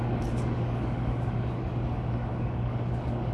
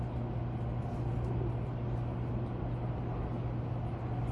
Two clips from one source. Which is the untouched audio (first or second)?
second